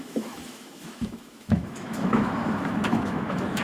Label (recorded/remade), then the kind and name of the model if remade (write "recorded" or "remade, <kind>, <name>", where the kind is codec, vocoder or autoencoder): remade, autoencoder, DAC-VAE